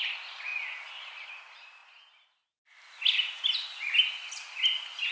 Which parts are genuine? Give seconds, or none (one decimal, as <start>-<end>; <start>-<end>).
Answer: 0.0-5.1